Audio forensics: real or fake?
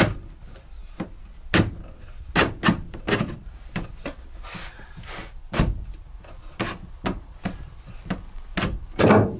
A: real